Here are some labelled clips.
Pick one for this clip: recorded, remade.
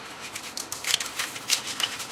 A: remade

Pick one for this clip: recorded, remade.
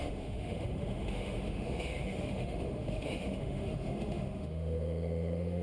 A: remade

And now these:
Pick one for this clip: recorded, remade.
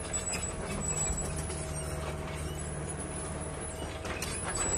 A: recorded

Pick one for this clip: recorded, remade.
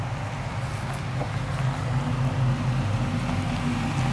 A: recorded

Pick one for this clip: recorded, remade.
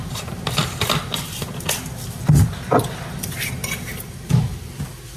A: recorded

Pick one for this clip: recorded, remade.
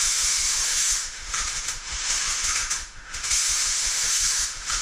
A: remade